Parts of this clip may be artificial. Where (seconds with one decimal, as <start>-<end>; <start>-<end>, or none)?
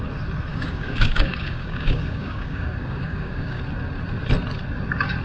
0.5-3.6